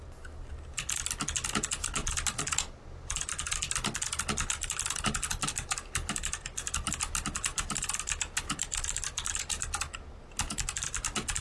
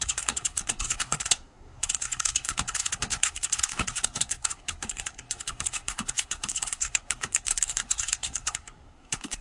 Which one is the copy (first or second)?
second